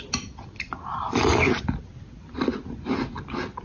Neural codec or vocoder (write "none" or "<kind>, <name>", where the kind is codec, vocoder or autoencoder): none